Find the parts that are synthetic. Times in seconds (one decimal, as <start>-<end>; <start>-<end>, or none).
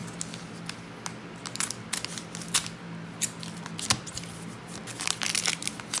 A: none